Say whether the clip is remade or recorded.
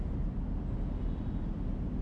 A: recorded